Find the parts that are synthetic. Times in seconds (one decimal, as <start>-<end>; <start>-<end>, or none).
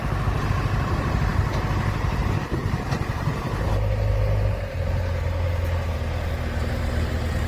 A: none